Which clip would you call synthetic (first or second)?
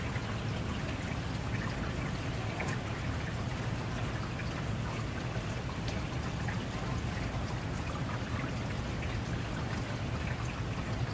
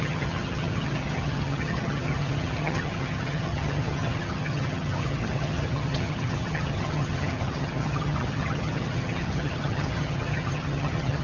second